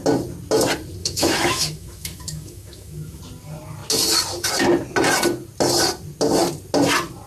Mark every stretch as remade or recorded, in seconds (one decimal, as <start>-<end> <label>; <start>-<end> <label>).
0.0-1.0 recorded; 1.0-3.2 remade; 3.2-7.3 recorded